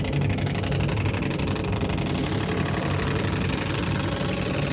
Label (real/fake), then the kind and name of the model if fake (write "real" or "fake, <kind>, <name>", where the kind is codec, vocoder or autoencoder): real